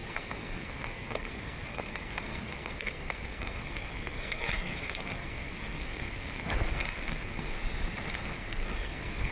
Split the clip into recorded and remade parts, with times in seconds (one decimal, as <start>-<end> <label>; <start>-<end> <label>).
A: 0.0-7.6 remade; 7.6-8.2 recorded; 8.2-9.3 remade